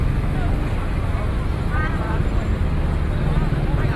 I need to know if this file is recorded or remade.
recorded